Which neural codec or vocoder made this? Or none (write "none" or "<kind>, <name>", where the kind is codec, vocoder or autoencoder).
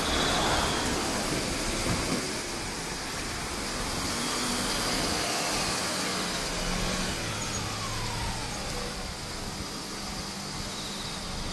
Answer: none